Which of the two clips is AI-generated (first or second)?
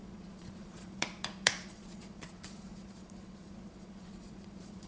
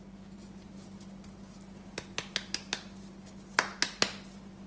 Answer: first